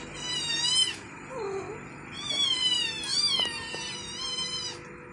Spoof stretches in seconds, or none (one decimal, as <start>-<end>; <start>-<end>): none